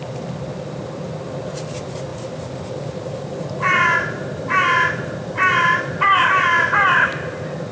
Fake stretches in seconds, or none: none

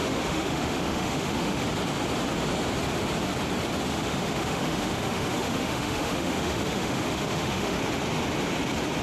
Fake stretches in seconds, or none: 0.0-1.6; 3.9-7.8